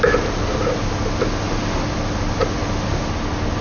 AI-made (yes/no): no